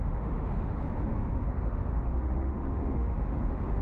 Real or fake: fake